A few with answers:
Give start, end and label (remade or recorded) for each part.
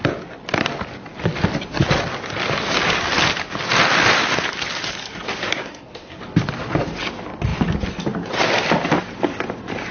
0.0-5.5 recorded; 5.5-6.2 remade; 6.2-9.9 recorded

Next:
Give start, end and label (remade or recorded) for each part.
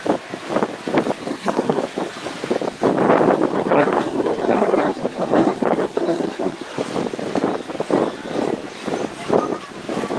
0.0-1.3 recorded; 1.3-1.8 remade; 1.8-3.5 recorded; 3.5-6.8 remade; 6.8-10.2 recorded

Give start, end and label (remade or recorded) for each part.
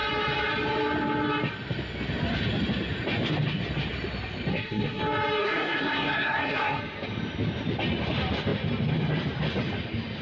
0.0-4.5 recorded; 4.5-5.0 remade; 5.0-5.4 recorded; 5.4-6.8 remade; 6.8-10.2 recorded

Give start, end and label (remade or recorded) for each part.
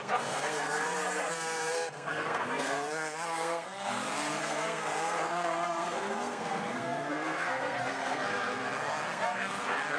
0.0-10.0 remade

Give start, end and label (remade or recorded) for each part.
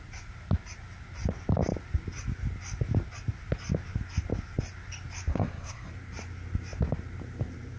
0.0-5.3 recorded; 5.3-5.9 remade; 5.9-7.8 recorded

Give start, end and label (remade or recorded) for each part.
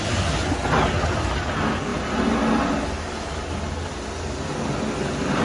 0.0-5.4 recorded